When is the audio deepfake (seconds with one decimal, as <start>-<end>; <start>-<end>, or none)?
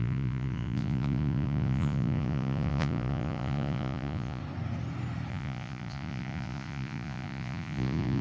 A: 0.0-4.4; 5.3-8.2